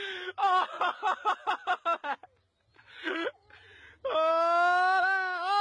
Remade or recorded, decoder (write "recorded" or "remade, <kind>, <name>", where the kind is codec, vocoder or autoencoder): recorded